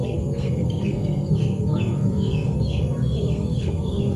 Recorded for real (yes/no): no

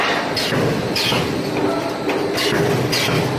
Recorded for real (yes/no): yes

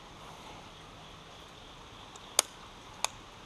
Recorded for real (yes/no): yes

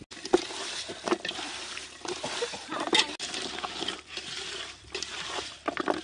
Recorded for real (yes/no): yes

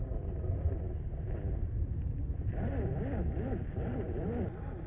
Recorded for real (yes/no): yes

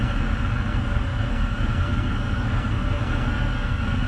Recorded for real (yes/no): no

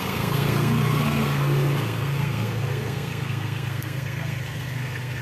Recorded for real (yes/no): no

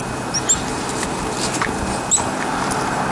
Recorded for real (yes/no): yes